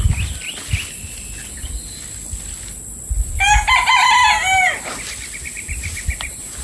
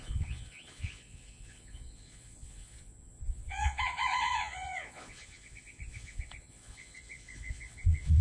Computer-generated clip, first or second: second